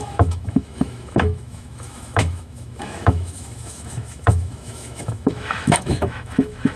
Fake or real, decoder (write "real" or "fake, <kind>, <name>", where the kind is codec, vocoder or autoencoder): fake, autoencoder, DAC-VAE